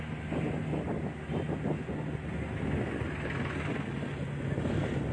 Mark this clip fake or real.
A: real